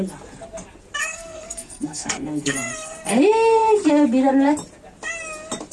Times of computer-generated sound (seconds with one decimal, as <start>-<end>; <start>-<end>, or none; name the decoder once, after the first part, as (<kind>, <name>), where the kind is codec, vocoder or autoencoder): 1.0-3.2 (codec, SNAC)